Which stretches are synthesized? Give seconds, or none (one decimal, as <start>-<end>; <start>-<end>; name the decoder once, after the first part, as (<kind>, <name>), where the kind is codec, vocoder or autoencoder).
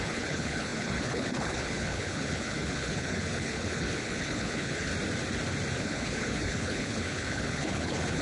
0.0-4.9 (codec, HILCodec); 5.8-8.2